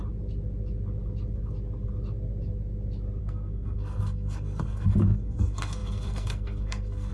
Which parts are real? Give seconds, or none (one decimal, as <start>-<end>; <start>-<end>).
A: 0.0-3.2